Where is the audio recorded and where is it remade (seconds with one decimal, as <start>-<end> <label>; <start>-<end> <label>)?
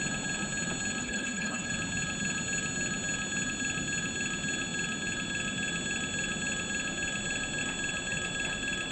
0.0-1.0 recorded; 1.0-1.7 remade; 1.7-8.9 recorded